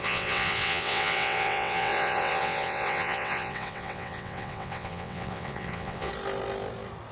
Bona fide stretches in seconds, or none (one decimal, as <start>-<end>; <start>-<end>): 6.1-7.1